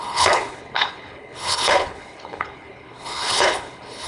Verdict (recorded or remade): remade